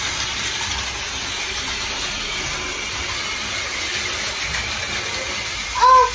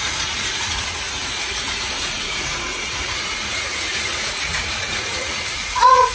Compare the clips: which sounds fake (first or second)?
second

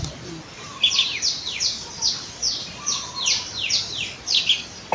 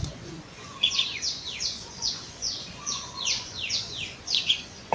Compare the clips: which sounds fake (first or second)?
second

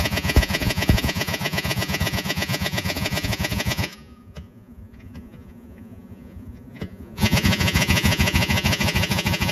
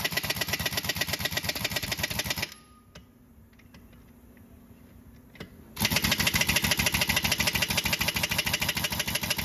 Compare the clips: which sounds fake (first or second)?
first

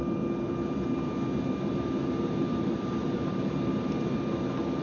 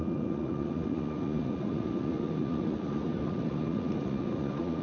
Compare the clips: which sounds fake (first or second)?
second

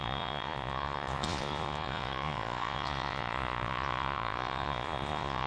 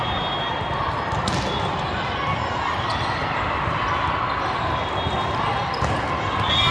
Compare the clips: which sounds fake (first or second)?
first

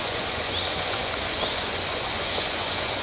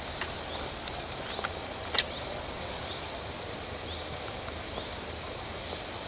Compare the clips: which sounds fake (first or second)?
first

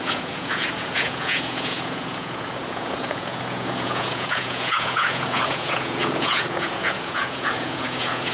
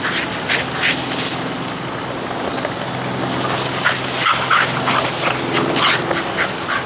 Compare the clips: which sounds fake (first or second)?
first